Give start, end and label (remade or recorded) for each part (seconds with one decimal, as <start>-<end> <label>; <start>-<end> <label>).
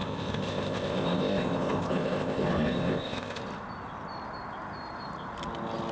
0.0-3.4 remade; 3.4-5.9 recorded